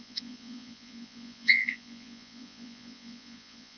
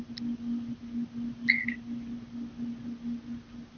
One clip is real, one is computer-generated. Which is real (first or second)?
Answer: second